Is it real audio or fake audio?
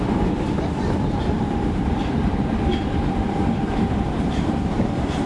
fake